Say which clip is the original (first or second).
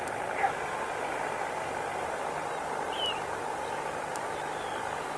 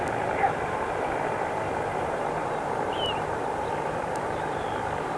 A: first